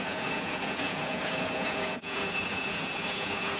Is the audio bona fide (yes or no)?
no